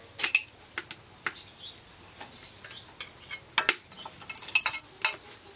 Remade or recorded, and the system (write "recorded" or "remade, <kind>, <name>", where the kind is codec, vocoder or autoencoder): recorded